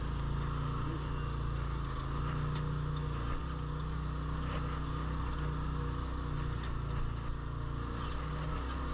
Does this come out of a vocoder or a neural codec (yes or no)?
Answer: no